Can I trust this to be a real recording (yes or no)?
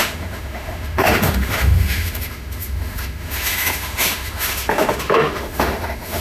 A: no